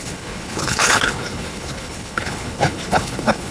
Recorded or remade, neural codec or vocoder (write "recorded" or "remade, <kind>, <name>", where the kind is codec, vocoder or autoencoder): remade, codec, HILCodec